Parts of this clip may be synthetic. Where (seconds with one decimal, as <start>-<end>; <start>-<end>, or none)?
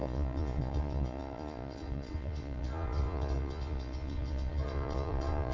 0.0-5.5